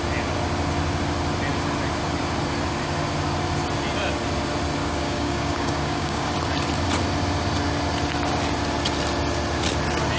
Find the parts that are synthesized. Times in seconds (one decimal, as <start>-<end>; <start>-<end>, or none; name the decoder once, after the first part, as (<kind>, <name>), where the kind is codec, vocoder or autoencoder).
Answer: 4.8-6.3 (codec, DAC)